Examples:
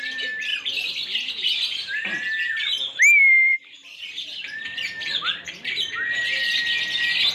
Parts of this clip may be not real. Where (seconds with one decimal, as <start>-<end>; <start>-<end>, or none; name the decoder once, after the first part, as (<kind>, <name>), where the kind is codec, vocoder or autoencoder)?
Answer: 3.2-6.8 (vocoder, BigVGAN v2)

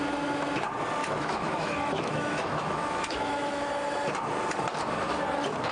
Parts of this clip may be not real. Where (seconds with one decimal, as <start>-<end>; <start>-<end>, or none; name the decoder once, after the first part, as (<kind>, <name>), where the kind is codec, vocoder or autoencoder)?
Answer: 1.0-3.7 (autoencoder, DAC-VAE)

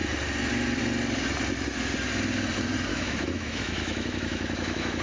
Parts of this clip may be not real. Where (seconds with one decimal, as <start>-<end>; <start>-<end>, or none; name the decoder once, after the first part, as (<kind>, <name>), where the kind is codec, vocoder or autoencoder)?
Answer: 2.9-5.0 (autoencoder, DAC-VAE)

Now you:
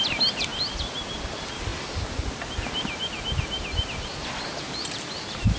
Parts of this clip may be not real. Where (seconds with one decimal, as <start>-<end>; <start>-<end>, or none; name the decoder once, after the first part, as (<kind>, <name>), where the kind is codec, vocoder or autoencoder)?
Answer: none